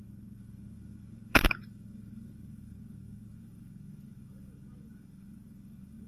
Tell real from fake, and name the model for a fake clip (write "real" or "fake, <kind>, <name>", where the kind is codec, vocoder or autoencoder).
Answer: fake, codec, DAC